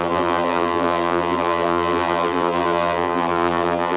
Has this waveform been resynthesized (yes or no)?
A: yes